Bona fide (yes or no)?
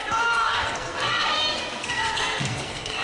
no